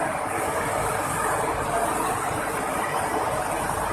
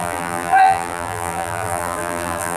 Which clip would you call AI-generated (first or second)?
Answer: second